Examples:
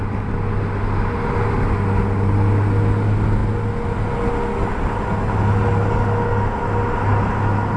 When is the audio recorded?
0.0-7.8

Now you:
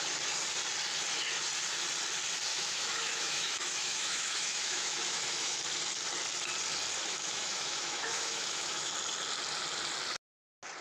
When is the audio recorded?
0.0-2.5; 5.6-7.0; 8.9-10.8

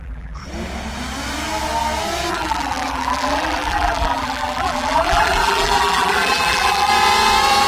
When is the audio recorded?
0.4-2.3; 6.9-7.7

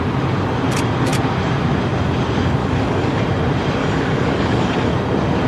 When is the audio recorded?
0.0-2.6; 3.2-3.8; 4.9-5.5

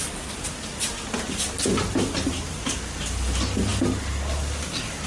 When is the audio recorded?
0.0-5.1

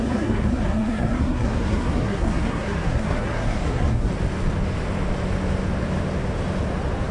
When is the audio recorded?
4.1-7.1